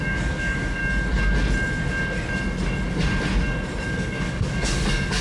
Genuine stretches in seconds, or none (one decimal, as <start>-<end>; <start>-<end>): 0.8-3.9